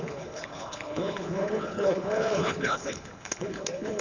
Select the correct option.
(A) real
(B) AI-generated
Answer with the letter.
B